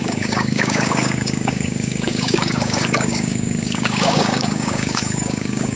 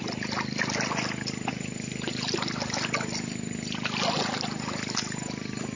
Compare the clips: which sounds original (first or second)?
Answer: second